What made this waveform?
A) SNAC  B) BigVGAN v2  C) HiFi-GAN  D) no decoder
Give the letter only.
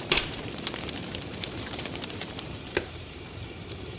B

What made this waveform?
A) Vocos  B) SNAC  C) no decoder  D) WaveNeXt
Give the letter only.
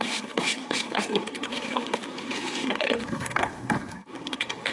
B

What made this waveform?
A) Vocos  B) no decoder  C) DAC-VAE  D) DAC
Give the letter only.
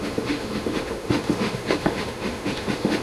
C